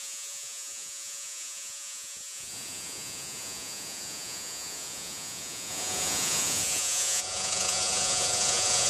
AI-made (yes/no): yes